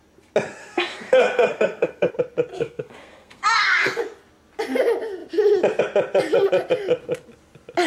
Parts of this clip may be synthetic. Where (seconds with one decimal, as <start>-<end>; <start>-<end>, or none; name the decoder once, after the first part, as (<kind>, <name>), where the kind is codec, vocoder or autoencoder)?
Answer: 0.6-2.1 (codec, SNAC); 2.5-4.0